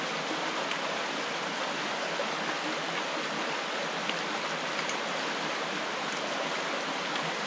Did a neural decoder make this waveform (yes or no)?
no